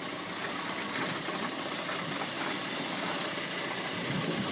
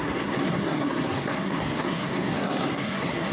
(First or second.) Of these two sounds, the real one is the first